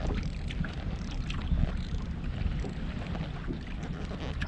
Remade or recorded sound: recorded